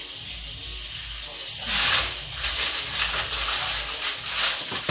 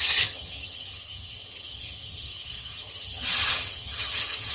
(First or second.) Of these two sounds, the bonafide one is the first